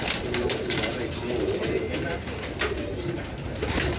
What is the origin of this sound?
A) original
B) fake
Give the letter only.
A